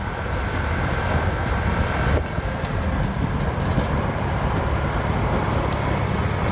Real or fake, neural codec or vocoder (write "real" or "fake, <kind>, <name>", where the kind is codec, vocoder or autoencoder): real